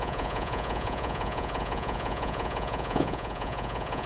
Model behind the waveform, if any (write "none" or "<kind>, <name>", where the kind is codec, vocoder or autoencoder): vocoder, Vocos